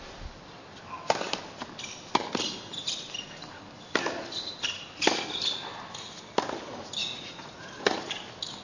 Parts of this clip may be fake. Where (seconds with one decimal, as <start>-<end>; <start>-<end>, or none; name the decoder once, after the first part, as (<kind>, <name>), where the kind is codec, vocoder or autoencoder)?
7.0-8.0 (vocoder, Vocos)